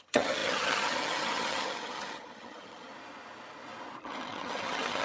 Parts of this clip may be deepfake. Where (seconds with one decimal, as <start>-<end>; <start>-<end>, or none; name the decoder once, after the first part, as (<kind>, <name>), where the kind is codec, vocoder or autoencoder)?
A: 0.0-2.9 (vocoder, HiFi-GAN); 4.0-5.0